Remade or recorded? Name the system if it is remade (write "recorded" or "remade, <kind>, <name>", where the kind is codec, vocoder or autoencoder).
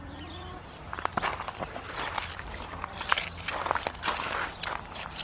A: recorded